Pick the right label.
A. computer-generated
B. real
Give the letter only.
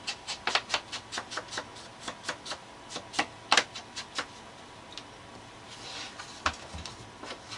B